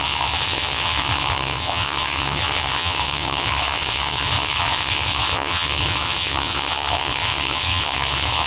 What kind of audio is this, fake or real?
fake